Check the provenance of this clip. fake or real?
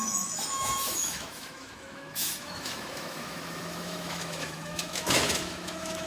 fake